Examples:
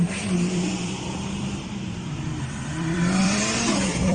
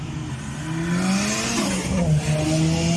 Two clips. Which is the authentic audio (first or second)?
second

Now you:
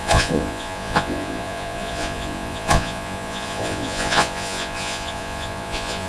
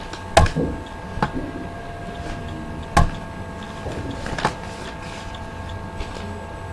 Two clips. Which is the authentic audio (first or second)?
second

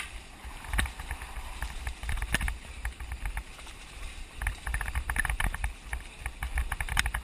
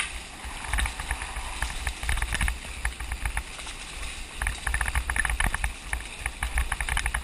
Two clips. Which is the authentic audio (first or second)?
second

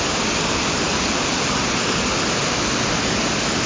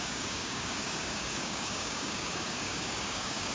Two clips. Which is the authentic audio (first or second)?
first